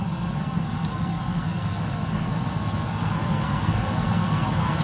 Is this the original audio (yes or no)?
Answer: no